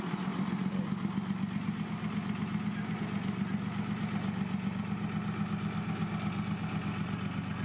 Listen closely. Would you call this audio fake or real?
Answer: real